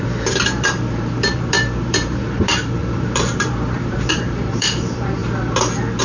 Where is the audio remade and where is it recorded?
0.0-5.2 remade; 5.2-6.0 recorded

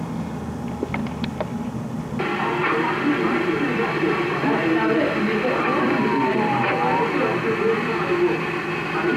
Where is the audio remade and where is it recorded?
0.0-1.0 recorded; 1.0-2.0 remade; 2.0-2.6 recorded; 2.6-6.7 remade; 6.7-9.2 recorded